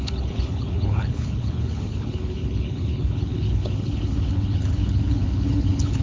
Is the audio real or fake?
fake